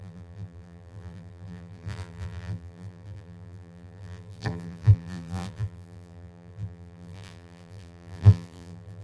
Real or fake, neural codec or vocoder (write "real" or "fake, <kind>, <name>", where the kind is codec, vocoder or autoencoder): fake, vocoder, BigVGAN v2